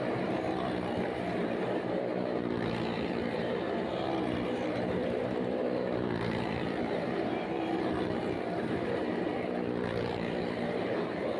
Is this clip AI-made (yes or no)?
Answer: yes